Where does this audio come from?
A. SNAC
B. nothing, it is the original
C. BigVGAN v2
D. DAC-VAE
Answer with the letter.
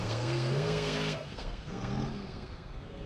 A